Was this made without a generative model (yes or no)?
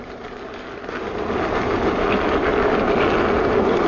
yes